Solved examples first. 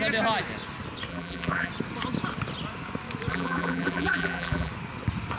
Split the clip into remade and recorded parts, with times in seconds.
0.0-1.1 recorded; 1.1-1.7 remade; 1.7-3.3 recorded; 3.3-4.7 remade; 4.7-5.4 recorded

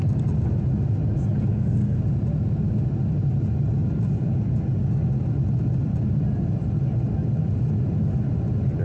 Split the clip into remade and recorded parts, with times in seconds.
0.0-1.5 recorded; 1.5-2.0 remade; 2.0-8.8 recorded